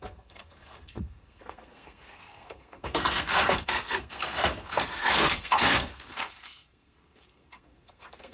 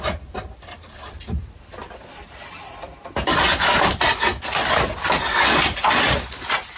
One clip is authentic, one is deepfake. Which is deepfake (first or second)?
first